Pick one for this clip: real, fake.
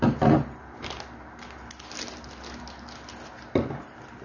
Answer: real